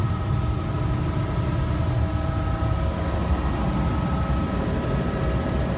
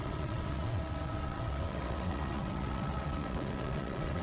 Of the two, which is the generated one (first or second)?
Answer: second